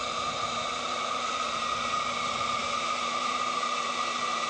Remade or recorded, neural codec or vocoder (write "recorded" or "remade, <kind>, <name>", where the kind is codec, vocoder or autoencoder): remade, vocoder, BigVGAN v2